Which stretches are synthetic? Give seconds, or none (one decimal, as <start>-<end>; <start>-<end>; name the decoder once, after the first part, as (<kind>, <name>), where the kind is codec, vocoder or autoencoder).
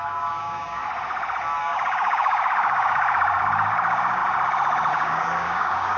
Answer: 0.0-0.8 (codec, DAC); 1.6-4.2; 4.9-6.0